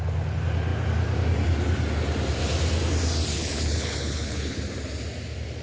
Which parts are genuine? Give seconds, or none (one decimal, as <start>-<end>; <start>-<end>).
0.0-3.3; 4.6-5.6